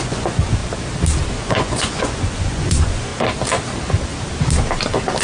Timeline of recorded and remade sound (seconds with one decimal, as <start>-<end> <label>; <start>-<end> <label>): 0.0-0.6 remade; 0.6-1.3 recorded; 1.3-3.1 remade; 3.1-5.2 recorded